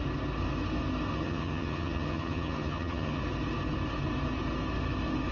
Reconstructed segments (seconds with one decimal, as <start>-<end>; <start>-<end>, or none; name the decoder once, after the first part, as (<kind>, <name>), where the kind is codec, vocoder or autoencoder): 1.1-3.2 (vocoder, HiFi-GAN)